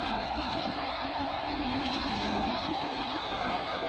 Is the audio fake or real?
fake